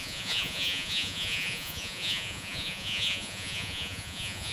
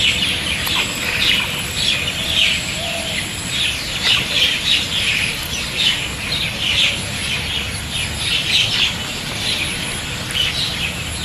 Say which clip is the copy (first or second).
first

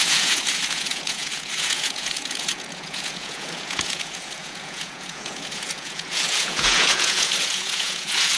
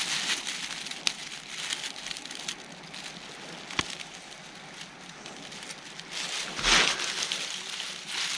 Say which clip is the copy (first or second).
first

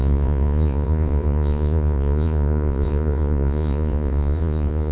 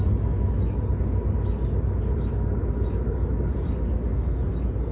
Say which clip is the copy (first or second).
first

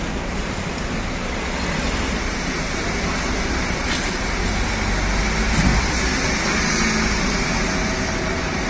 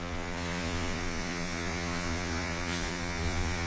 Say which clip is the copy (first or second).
second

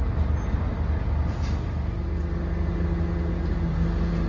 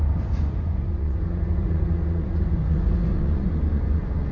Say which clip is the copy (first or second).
second